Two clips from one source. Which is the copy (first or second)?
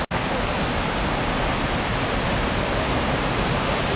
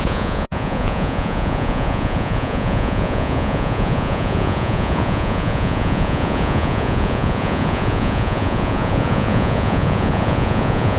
second